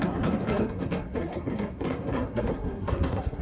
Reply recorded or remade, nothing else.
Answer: remade